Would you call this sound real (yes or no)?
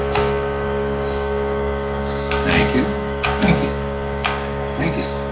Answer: no